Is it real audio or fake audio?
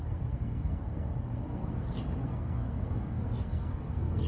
fake